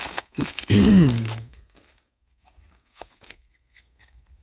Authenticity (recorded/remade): remade